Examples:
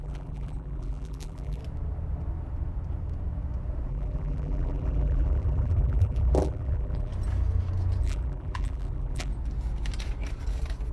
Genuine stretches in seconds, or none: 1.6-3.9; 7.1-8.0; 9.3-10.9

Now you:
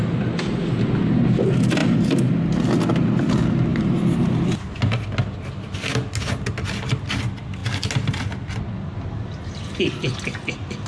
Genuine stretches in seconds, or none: 0.0-1.8; 2.3-3.7; 4.5-10.9

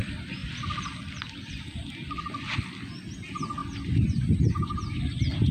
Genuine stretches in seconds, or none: 0.0-3.6; 4.5-5.5

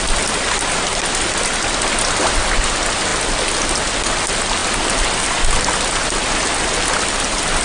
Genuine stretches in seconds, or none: 0.0-7.6

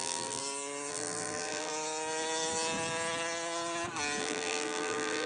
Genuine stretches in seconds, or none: 0.4-0.9; 1.7-4.2